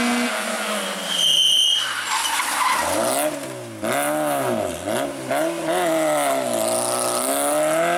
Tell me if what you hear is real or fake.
real